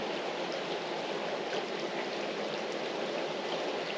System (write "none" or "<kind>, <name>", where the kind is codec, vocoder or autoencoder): none